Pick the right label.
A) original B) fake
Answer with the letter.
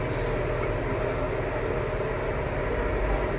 A